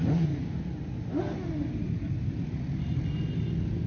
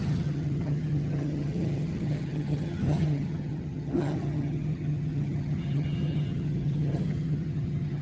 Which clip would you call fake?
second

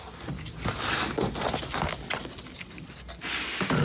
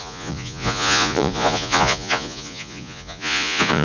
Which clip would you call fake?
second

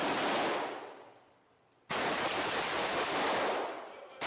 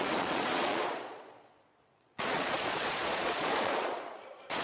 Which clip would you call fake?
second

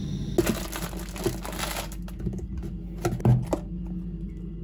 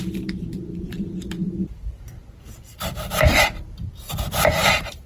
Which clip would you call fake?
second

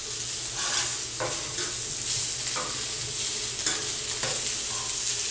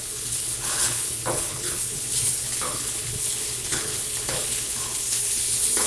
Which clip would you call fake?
second